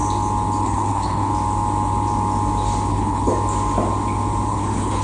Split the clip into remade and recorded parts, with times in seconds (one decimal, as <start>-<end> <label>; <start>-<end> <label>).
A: 0.0-0.6 recorded; 0.6-1.3 remade; 1.3-2.9 recorded; 2.9-3.3 remade; 3.3-4.5 recorded; 4.5-5.0 remade